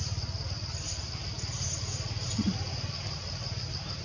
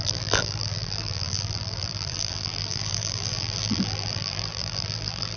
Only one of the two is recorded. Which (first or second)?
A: first